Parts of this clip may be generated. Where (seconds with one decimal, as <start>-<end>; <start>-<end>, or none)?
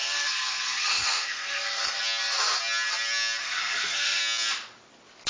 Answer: 0.0-2.0; 3.4-4.2